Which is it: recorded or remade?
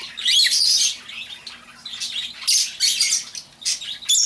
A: recorded